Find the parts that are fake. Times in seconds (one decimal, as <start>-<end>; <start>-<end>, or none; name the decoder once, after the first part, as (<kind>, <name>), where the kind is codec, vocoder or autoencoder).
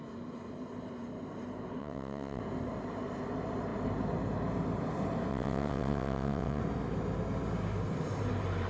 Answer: 1.8-2.4 (vocoder, WaveNeXt); 5.3-6.6